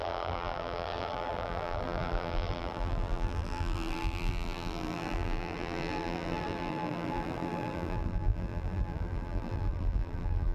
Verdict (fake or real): fake